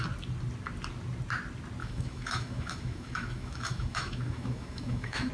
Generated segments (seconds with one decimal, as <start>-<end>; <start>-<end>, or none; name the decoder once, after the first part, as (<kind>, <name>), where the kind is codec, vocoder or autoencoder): 1.8-5.3 (autoencoder, DAC-VAE)